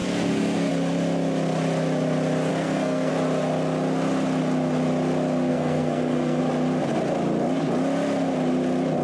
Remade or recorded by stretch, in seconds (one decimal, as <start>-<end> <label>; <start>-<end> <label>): 0.0-0.7 remade; 0.7-2.5 recorded; 2.5-3.1 remade; 3.1-5.5 recorded; 5.5-6.4 remade; 6.4-9.0 recorded